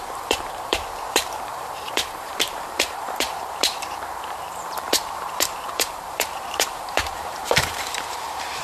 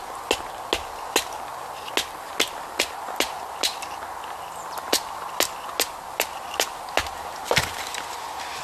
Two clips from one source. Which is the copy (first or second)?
first